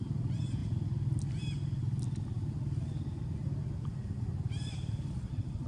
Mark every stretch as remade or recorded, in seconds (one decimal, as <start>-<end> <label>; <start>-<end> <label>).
0.0-0.6 recorded; 0.6-1.2 remade; 1.2-5.7 recorded